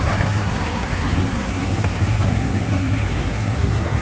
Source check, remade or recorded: remade